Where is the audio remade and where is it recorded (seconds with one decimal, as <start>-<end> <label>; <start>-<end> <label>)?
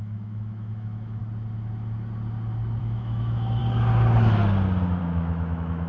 0.0-1.2 remade; 1.2-2.8 recorded; 2.8-3.6 remade; 3.6-5.0 recorded; 5.0-5.9 remade